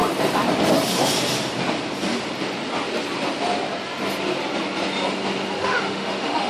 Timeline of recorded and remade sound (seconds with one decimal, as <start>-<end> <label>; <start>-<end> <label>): 0.0-5.6 recorded; 5.6-6.5 remade